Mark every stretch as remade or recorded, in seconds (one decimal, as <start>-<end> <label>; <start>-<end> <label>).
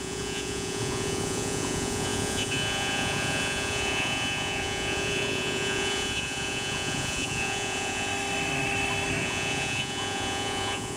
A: 0.0-8.1 remade; 8.1-9.2 recorded; 9.2-11.0 remade